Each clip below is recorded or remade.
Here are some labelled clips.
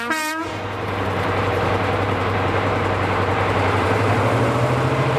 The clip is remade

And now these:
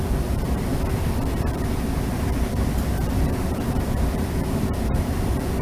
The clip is remade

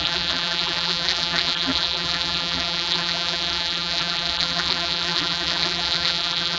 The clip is remade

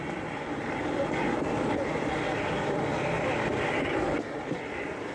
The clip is remade